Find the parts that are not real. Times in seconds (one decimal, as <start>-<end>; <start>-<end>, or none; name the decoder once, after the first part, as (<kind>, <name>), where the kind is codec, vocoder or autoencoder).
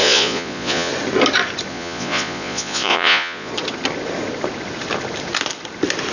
0.0-0.9 (vocoder, Vocos); 1.7-3.5